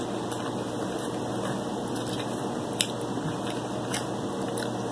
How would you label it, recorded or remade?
recorded